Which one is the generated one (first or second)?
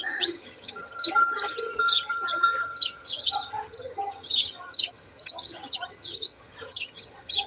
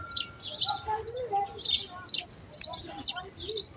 first